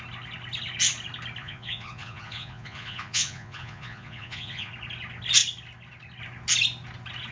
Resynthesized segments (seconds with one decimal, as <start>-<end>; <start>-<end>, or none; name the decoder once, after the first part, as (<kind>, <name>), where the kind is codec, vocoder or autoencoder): 1.4-4.7 (vocoder, Vocos)